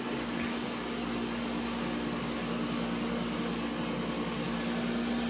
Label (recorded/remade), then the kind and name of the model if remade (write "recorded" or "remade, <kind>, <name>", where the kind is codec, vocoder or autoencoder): recorded